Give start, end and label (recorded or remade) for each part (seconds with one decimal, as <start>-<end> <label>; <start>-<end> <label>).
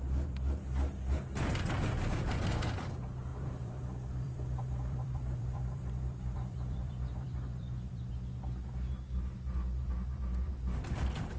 0.0-3.3 recorded; 3.3-8.1 remade; 8.1-11.4 recorded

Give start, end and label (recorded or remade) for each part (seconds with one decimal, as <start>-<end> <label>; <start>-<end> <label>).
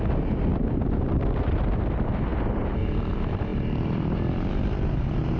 0.0-5.4 recorded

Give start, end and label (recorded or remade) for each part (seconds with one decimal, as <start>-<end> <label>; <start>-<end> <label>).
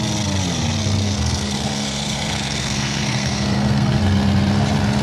0.0-1.0 recorded; 1.0-4.0 remade; 4.0-5.0 recorded